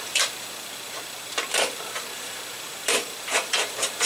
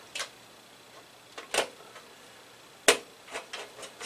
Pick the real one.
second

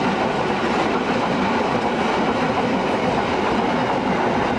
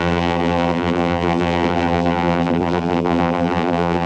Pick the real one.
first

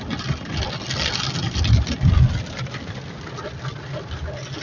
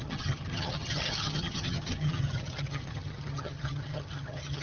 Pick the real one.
first